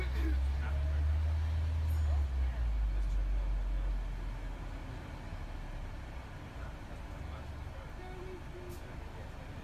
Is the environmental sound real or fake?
real